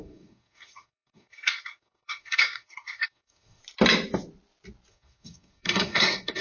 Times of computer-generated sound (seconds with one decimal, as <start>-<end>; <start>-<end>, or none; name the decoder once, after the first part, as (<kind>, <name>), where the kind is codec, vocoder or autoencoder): 0.0-3.6 (codec, SNAC); 4.9-6.4